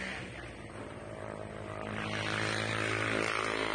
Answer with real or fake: real